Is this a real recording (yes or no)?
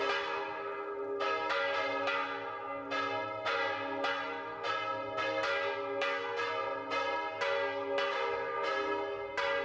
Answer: yes